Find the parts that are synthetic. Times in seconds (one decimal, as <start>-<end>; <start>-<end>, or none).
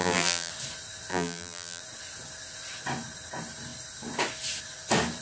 0.0-0.5; 1.1-1.8